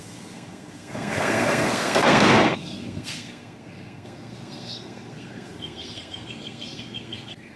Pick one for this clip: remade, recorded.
remade